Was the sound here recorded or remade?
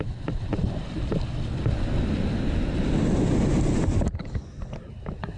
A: recorded